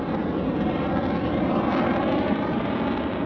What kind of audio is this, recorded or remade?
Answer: recorded